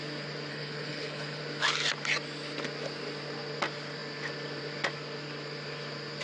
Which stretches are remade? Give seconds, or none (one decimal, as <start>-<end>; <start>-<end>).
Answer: 0.5-1.4